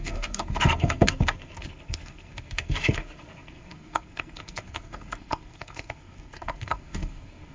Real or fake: fake